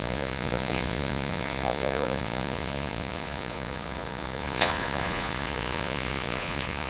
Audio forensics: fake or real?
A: fake